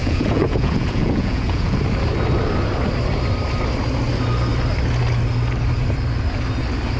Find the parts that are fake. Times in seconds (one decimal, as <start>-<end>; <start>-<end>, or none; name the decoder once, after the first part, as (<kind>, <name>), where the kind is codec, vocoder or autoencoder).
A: 0.0-1.8 (vocoder, Vocos)